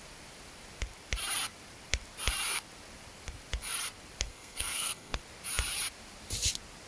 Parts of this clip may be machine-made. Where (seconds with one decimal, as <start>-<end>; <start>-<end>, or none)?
4.3-5.2